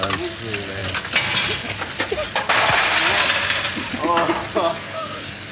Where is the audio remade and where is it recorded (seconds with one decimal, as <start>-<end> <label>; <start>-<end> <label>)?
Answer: 0.0-4.7 recorded; 4.7-5.5 remade